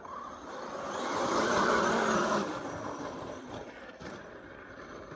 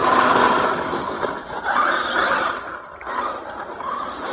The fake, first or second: first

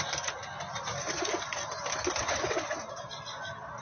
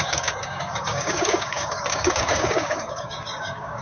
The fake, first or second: second